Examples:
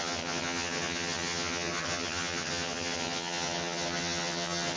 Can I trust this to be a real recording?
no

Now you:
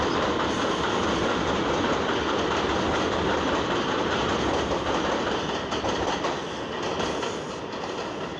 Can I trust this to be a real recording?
yes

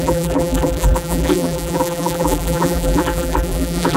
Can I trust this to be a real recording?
no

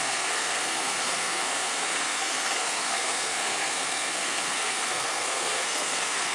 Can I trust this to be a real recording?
no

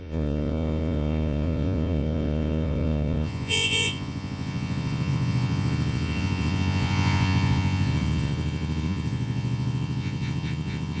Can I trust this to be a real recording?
no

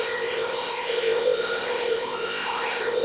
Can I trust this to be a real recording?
no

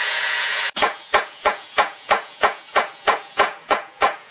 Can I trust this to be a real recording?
no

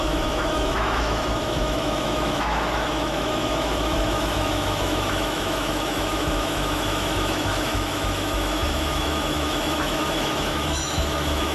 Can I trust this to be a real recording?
no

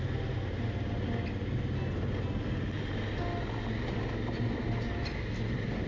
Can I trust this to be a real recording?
yes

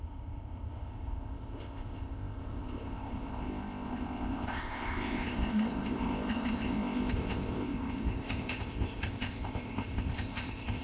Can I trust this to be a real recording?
no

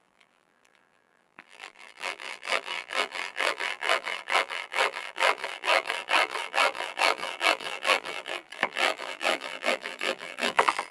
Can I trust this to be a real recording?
no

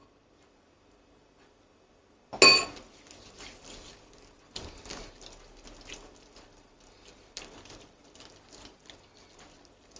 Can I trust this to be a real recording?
yes